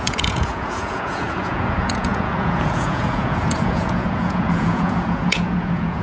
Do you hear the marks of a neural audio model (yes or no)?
yes